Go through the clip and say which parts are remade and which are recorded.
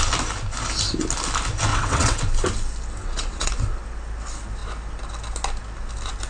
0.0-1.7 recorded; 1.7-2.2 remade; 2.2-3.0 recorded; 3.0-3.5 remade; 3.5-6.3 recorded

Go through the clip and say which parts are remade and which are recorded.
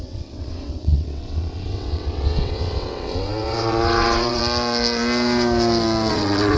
0.0-4.4 remade; 4.4-6.1 recorded; 6.1-6.6 remade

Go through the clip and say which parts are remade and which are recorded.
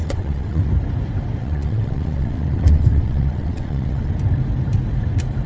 0.0-0.7 remade; 0.7-1.4 recorded; 1.4-4.1 remade; 4.1-5.5 recorded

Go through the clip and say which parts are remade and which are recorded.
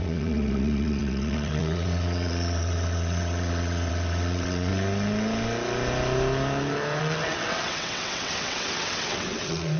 0.0-4.7 remade; 4.7-7.0 recorded; 7.0-9.8 remade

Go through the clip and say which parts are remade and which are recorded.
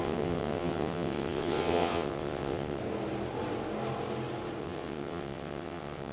0.0-2.8 remade; 2.8-4.6 recorded; 4.6-6.1 remade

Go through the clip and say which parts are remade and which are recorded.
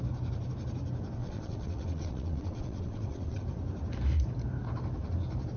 0.0-1.2 recorded; 1.2-3.4 remade; 3.4-5.6 recorded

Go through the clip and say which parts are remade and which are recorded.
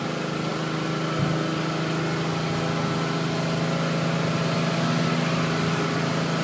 0.0-6.4 recorded